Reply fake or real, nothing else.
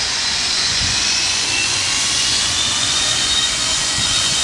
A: fake